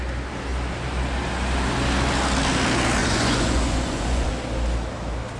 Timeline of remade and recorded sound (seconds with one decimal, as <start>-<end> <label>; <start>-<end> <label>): 0.0-3.0 recorded; 3.0-4.3 remade; 4.3-5.4 recorded